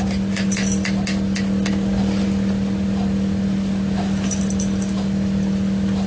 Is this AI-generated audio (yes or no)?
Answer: no